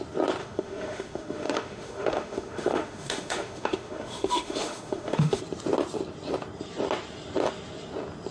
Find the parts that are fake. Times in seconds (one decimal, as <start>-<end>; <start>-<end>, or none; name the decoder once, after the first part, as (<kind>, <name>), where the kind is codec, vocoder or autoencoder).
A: 0.4-5.4 (autoencoder, DAC-VAE)